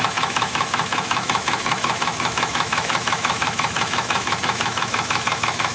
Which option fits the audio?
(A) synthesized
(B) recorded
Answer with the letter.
A